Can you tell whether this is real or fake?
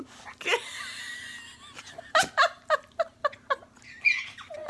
real